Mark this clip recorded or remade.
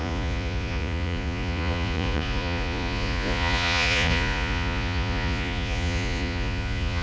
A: remade